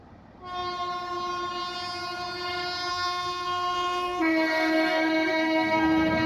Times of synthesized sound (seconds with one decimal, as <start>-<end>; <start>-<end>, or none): 2.9-6.3